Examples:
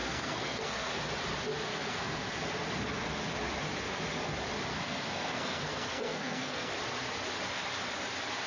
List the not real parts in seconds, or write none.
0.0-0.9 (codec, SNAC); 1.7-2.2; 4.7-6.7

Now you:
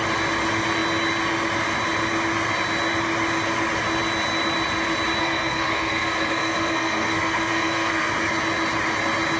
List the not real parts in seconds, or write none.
5.2-8.1 (codec, SNAC)

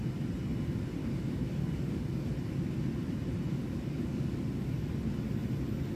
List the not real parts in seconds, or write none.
1.0-2.3 (codec, DAC); 3.5-4.4

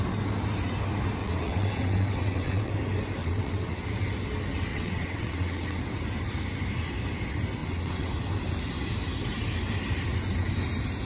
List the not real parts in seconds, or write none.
1.2-2.7 (vocoder, WaveNeXt); 3.2-3.8; 4.7-5.8; 7.6-8.1